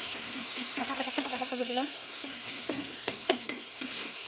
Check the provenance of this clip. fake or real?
fake